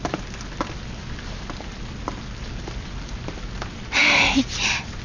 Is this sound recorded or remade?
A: recorded